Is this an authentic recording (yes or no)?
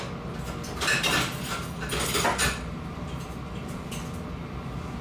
yes